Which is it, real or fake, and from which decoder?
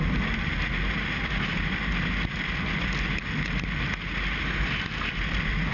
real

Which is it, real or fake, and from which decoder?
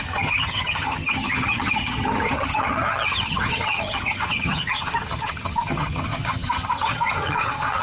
fake, vocoder, HiFi-GAN